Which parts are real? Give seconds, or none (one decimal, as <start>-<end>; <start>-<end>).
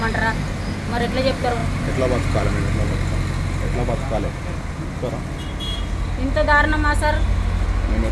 0.0-8.1